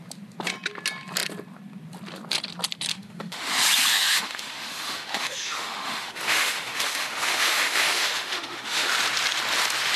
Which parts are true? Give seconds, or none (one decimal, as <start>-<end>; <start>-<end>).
0.0-2.9; 3.5-3.9; 8.9-10.0